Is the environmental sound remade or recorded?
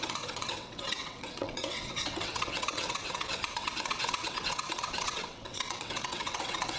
remade